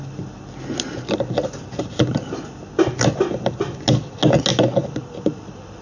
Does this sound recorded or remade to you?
recorded